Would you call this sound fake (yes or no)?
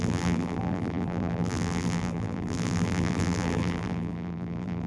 yes